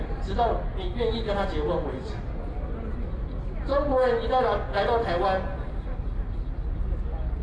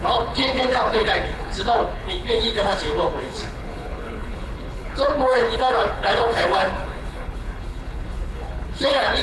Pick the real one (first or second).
first